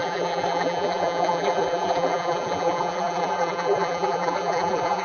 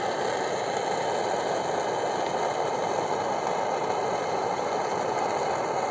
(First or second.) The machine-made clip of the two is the first